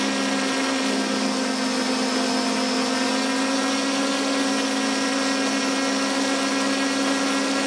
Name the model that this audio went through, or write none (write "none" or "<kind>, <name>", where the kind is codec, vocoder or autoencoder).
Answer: none